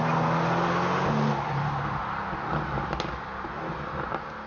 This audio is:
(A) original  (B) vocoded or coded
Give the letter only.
A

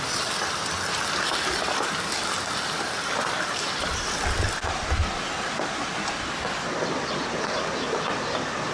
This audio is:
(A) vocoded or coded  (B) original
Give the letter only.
B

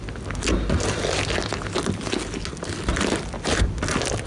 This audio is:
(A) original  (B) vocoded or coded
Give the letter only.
A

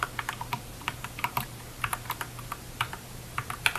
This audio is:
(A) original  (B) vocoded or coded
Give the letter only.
B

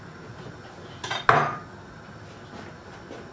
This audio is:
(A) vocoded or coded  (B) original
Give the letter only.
B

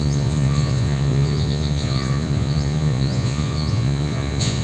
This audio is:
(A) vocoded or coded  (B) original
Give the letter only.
A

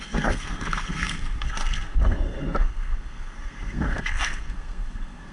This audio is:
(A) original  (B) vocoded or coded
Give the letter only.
B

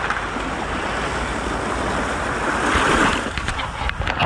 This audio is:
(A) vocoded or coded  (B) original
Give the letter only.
B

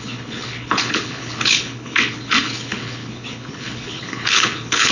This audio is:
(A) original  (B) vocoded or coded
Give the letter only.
B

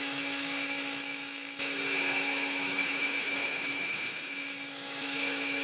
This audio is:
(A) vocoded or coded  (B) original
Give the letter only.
A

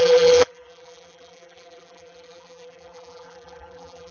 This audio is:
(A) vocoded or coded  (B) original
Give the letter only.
A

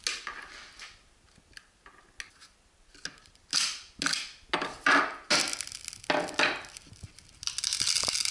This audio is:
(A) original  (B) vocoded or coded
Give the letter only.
A